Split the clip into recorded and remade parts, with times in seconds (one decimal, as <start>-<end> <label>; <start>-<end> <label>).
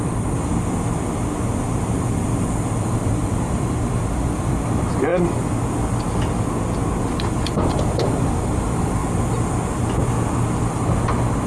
0.0-0.5 remade; 0.5-2.8 recorded; 2.8-5.1 remade; 5.1-7.0 recorded; 7.0-9.0 remade; 9.0-10.6 recorded; 10.6-11.5 remade